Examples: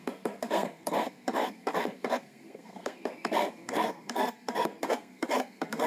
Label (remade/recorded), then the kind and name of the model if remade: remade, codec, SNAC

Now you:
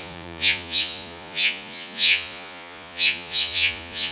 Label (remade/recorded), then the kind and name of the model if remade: remade, vocoder, Vocos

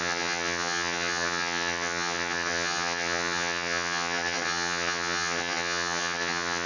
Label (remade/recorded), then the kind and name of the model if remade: remade, vocoder, HiFi-GAN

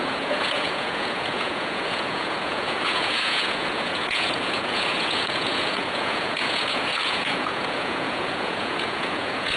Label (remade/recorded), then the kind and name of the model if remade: remade, vocoder, Vocos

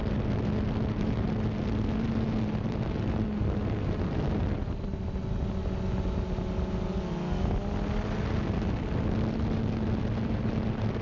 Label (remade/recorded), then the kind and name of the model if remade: recorded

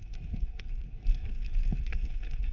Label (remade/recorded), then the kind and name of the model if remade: remade, codec, SNAC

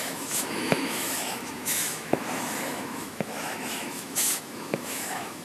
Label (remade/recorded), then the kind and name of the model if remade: remade, autoencoder, DAC-VAE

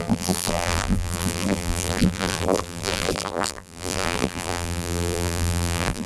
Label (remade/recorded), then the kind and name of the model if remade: remade, vocoder, BigVGAN v2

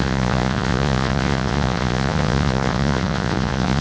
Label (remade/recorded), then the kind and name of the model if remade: remade, vocoder, Vocos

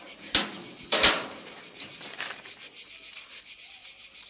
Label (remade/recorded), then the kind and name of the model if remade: recorded